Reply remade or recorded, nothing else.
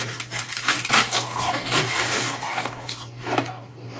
remade